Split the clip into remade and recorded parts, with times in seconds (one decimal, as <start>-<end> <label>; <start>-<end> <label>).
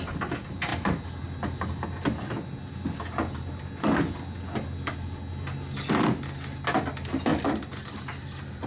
0.0-7.3 recorded; 7.3-8.7 remade